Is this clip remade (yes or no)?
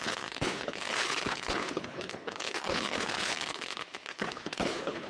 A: yes